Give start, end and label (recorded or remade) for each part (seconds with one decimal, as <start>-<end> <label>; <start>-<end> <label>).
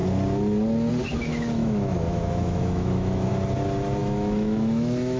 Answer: 0.0-1.3 recorded; 1.3-3.3 remade; 3.3-4.0 recorded; 4.0-5.2 remade